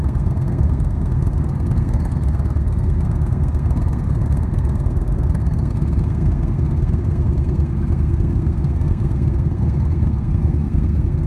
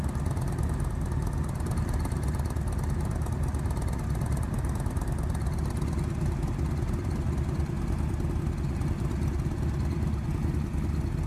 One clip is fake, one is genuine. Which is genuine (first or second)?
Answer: second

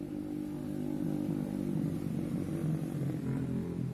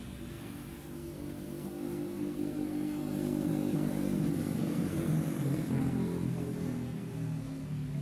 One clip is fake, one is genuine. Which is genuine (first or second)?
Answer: first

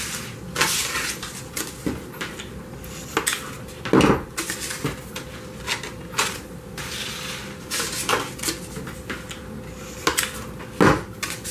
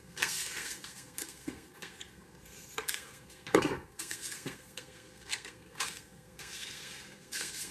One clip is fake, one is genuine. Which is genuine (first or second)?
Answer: first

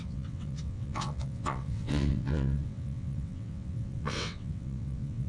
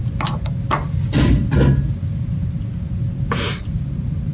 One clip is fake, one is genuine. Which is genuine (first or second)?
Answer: second